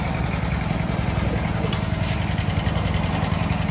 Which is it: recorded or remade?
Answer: recorded